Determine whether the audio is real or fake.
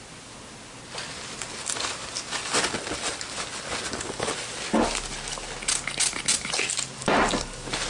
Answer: real